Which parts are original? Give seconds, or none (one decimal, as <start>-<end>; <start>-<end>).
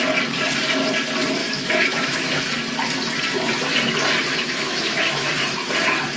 0.0-1.4; 2.4-4.3; 5.3-6.2